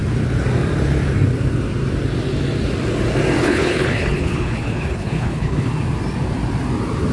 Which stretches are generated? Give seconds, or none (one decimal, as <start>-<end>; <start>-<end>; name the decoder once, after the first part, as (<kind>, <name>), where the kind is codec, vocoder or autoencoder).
3.4-5.7 (codec, HILCodec)